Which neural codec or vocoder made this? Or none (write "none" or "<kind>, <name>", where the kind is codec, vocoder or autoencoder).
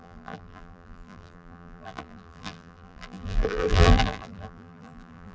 vocoder, BigVGAN v2